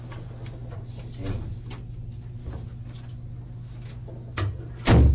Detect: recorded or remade recorded